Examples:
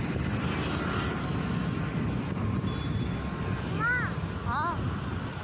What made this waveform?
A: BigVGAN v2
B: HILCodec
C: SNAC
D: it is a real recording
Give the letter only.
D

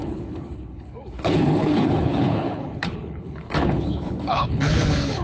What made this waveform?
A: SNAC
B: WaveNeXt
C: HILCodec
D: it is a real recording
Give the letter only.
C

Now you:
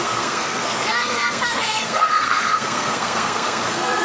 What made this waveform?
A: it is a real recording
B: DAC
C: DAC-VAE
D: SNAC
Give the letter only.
D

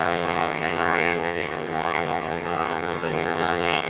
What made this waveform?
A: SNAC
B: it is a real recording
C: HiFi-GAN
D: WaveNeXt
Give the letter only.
C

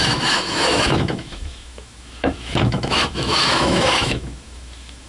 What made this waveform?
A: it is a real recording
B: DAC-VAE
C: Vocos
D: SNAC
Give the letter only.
B